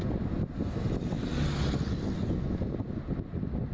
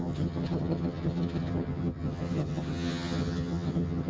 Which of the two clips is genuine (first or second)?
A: first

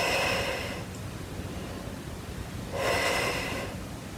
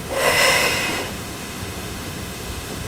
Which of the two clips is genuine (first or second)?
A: first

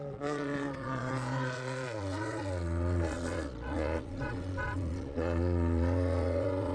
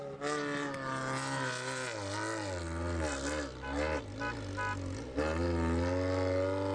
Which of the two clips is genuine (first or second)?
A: second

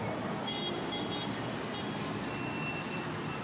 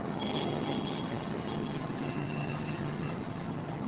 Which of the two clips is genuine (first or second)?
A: first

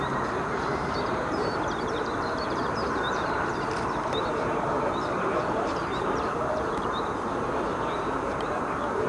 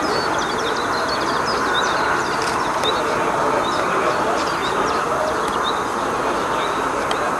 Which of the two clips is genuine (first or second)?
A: second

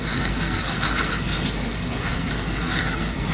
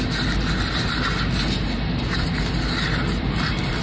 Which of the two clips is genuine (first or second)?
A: second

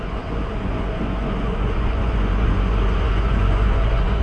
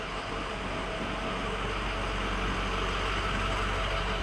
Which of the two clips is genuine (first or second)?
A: second